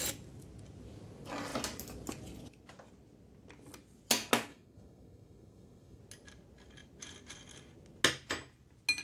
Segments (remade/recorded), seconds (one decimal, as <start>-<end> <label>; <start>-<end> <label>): 0.0-4.5 recorded; 4.5-6.0 remade; 6.0-9.0 recorded